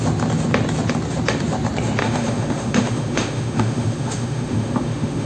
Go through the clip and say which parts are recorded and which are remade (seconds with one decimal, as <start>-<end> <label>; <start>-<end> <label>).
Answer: 0.0-2.0 recorded; 2.0-5.3 remade